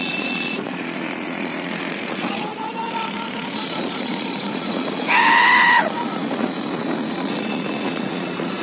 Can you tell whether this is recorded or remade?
remade